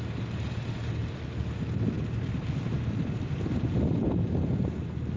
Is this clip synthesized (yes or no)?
no